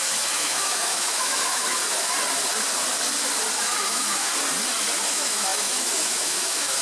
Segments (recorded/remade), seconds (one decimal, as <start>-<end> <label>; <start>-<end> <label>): 0.0-1.8 remade; 1.8-3.9 recorded; 3.9-4.3 remade; 4.3-5.1 recorded; 5.1-6.8 remade